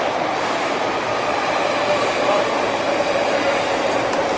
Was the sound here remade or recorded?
recorded